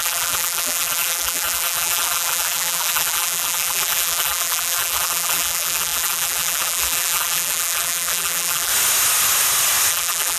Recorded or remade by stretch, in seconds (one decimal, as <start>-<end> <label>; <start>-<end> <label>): 0.0-8.7 remade; 8.7-9.9 recorded; 9.9-10.4 remade